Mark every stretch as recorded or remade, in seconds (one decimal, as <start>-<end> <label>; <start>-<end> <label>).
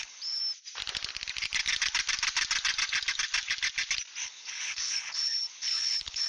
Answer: 0.0-0.4 remade; 0.4-4.2 recorded; 4.2-6.3 remade